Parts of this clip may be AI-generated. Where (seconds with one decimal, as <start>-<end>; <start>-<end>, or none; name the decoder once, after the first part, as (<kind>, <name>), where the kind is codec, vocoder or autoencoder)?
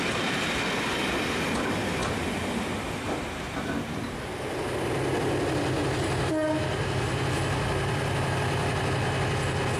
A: none